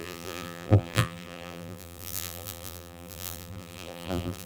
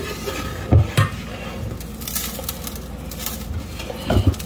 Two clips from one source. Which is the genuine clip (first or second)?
second